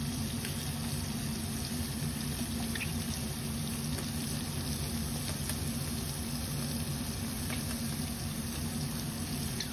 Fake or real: real